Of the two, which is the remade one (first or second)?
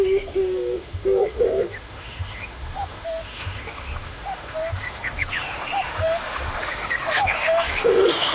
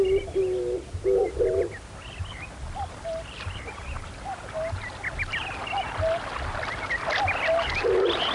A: first